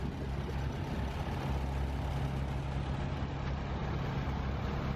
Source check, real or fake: real